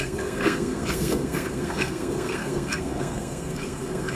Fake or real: fake